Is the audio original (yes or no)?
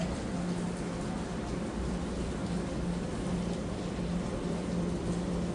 yes